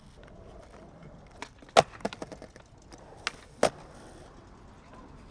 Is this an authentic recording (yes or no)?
yes